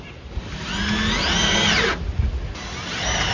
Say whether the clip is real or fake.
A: real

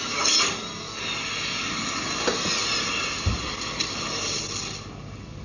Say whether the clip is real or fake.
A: real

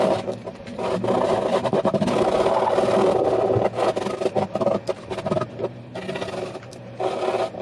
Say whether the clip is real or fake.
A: real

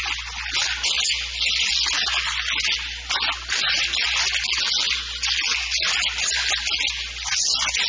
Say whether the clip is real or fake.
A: real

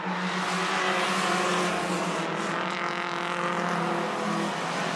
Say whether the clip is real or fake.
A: real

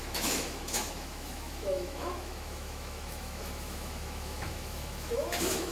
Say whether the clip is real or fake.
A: fake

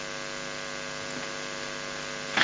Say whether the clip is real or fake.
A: real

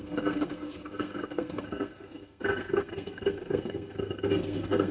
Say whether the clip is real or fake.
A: fake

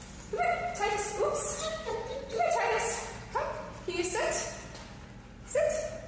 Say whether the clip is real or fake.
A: real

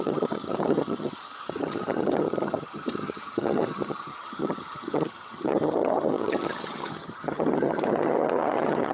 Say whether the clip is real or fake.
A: fake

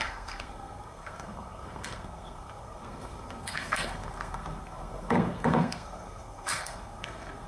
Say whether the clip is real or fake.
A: fake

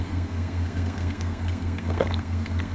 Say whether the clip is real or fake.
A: fake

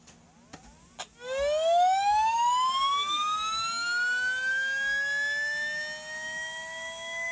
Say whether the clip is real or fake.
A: real